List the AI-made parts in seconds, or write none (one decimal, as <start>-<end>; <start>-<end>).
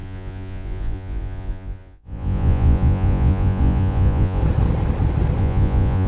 0.0-4.4; 5.4-6.1